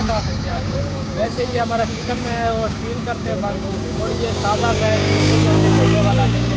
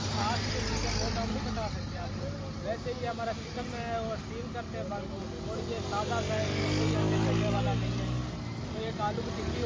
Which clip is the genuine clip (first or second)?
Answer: second